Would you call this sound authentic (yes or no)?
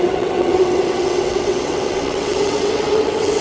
no